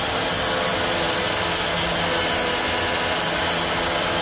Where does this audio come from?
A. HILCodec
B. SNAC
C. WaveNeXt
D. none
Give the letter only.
D